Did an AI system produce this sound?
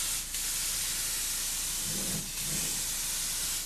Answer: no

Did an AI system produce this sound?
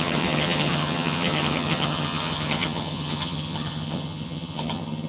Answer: yes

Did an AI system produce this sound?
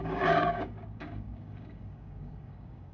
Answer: yes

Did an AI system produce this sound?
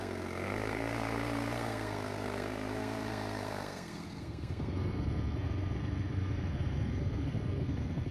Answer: yes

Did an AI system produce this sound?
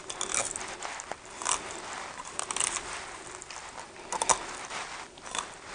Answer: no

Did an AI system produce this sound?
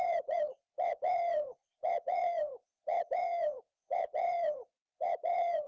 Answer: yes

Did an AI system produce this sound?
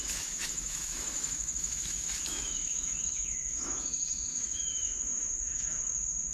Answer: yes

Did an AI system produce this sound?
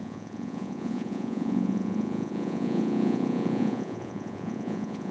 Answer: yes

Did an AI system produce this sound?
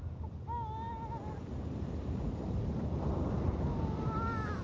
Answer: no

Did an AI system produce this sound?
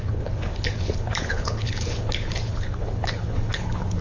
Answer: yes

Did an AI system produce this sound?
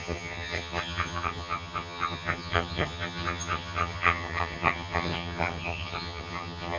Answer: yes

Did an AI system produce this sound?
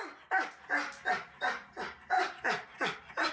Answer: no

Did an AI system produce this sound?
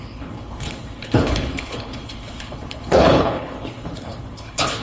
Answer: yes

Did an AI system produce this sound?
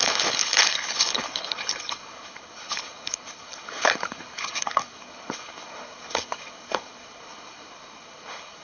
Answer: yes